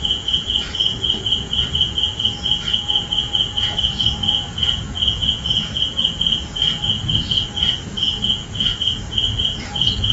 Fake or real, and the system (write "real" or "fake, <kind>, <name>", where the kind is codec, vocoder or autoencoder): fake, vocoder, Vocos